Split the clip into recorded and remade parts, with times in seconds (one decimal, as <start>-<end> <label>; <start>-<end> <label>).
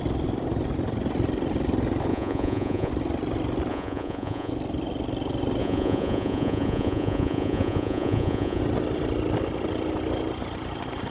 0.0-2.1 recorded; 2.1-2.9 remade; 2.9-3.7 recorded; 3.7-4.5 remade; 4.5-5.6 recorded; 5.6-8.6 remade; 8.6-11.1 recorded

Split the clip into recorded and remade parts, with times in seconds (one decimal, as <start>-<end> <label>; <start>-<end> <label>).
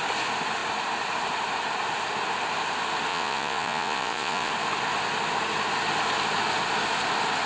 0.0-3.1 recorded; 3.1-4.5 remade; 4.5-7.5 recorded